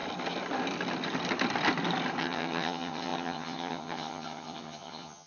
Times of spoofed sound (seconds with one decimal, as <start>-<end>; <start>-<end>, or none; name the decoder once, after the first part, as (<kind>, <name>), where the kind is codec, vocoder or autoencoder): 2.2-5.3 (vocoder, HiFi-GAN)